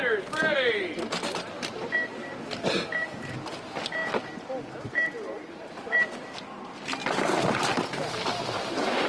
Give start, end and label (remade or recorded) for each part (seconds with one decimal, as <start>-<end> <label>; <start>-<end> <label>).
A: 0.0-9.1 recorded